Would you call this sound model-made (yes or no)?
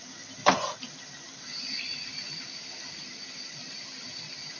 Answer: yes